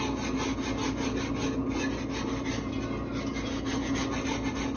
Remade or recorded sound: recorded